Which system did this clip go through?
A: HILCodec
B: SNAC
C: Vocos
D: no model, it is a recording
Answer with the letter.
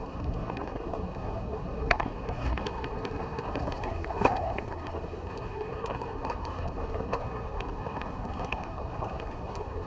B